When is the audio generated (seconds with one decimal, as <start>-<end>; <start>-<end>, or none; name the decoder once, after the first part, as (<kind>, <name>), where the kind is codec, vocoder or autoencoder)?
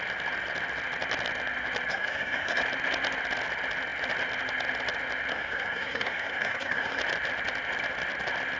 1.9-2.6 (codec, SNAC); 5.3-7.0